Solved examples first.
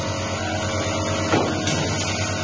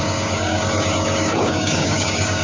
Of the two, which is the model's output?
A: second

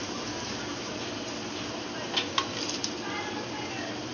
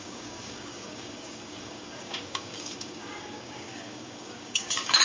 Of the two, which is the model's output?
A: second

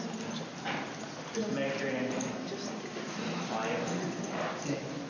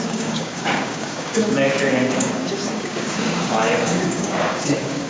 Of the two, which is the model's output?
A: second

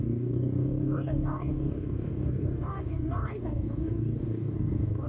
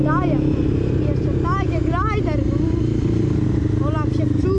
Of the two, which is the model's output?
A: first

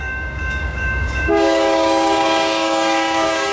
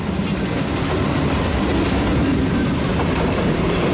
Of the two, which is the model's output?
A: first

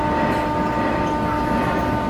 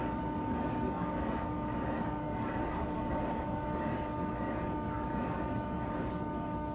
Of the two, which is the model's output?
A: second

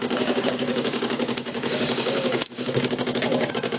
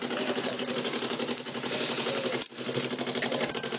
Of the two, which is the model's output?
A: first